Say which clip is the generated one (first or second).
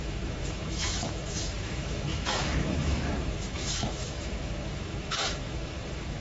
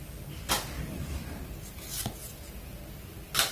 first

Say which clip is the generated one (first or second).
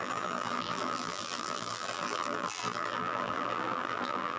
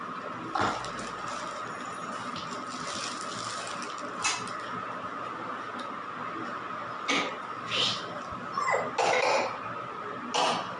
first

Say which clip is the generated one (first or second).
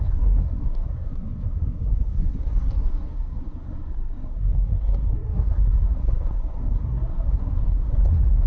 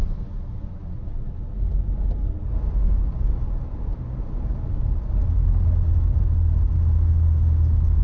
first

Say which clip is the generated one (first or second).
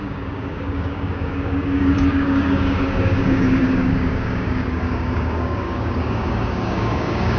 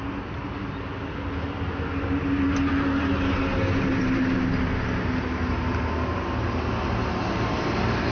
first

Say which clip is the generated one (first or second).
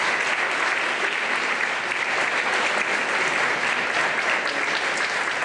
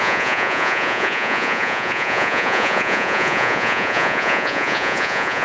second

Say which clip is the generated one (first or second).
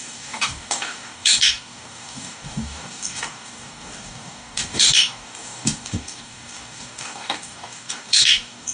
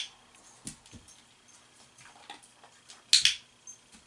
first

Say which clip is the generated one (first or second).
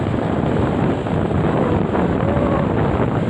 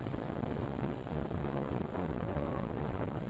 second